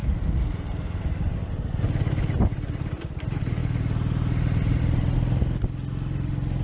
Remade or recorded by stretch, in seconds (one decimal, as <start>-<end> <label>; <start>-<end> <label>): 0.0-6.6 recorded